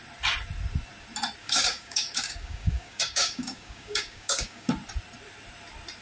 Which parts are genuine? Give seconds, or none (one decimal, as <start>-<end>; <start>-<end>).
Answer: 0.0-1.4; 4.7-6.0